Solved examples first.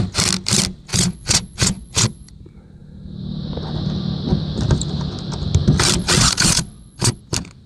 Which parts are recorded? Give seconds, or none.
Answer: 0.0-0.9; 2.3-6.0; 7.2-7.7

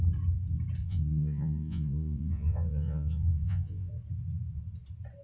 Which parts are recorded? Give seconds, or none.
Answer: 0.0-0.8; 3.9-5.2

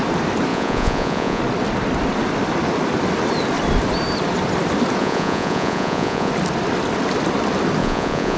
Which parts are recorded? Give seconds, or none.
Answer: 0.0-0.5; 1.4-5.0; 6.3-7.8